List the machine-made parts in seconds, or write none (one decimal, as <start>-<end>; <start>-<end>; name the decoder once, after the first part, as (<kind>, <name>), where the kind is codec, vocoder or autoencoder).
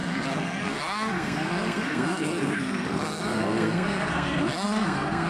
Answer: 0.0-5.3 (codec, SNAC)